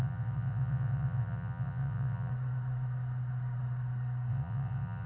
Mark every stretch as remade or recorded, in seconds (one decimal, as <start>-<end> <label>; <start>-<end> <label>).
0.0-2.3 remade; 2.3-4.3 recorded; 4.3-5.1 remade